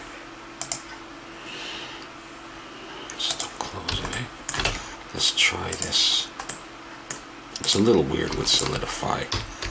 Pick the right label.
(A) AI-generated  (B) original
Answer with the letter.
B